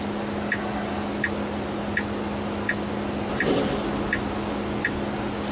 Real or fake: real